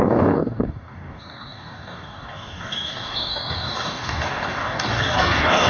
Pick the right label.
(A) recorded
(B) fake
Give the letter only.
B